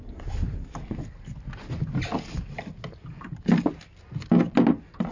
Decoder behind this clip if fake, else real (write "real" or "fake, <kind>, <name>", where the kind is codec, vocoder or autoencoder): real